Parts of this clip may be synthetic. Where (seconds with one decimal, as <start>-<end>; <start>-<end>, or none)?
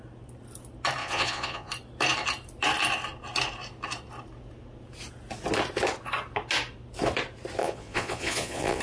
1.0-1.7; 7.6-8.8